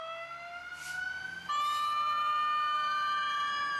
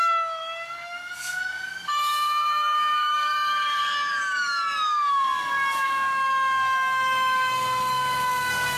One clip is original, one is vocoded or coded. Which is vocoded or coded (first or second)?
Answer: second